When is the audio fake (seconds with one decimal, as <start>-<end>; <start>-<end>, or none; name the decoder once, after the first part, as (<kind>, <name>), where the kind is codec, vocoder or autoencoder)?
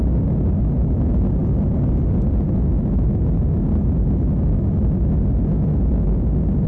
none